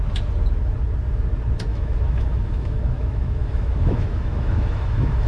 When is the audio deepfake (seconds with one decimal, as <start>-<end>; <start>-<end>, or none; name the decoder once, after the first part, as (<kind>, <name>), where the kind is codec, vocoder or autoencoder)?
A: 1.7-5.3 (autoencoder, DAC-VAE)